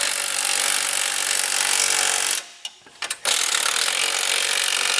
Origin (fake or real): real